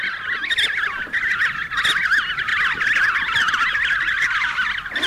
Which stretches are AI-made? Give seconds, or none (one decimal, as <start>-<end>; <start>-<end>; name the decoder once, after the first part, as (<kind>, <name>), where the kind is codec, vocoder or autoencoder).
none

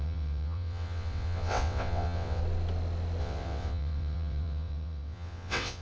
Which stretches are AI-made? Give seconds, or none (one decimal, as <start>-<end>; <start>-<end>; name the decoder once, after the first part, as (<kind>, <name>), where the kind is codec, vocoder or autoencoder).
0.0-2.4 (vocoder, WaveNeXt); 3.2-5.8

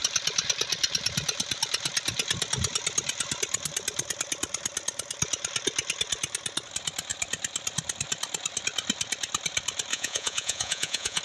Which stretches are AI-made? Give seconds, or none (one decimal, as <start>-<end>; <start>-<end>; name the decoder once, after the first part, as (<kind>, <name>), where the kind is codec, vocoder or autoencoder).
9.9-11.2 (vocoder, Vocos)

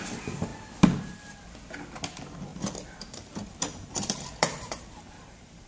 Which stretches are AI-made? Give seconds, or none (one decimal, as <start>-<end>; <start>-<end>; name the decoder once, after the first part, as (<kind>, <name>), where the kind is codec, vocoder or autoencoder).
2.5-5.7 (vocoder, BigVGAN v2)

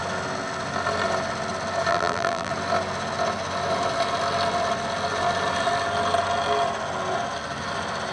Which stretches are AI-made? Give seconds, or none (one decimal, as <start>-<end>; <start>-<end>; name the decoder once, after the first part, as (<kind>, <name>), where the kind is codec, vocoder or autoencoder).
1.9-2.5 (vocoder, BigVGAN v2)

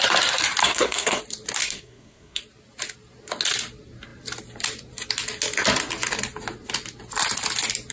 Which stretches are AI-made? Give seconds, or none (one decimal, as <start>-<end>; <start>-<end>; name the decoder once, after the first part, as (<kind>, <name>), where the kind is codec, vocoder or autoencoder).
0.6-1.2 (codec, SNAC); 1.6-2.4

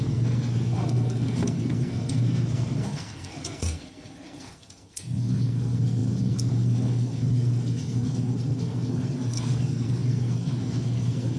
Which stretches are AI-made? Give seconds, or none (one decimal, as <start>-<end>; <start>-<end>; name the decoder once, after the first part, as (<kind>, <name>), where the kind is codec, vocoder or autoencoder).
0.0-11.4 (codec, SNAC)

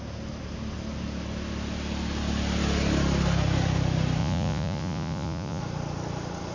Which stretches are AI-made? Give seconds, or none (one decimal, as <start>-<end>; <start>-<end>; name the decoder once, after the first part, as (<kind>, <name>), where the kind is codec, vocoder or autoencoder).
4.2-5.6 (vocoder, Vocos)